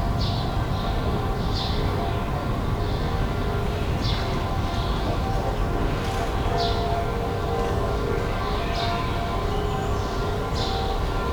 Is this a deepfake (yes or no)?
no